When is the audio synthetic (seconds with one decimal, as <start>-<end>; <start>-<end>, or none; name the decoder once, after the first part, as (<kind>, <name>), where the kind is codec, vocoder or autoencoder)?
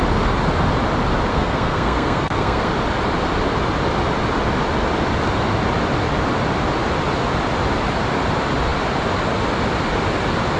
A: 1.3-2.7 (codec, SNAC)